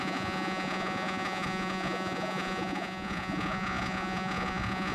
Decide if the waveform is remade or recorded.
remade